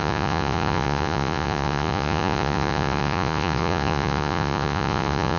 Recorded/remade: remade